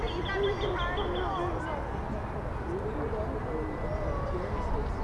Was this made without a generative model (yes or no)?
yes